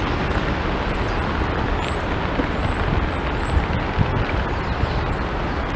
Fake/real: real